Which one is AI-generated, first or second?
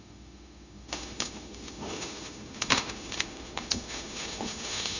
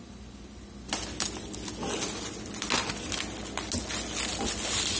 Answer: first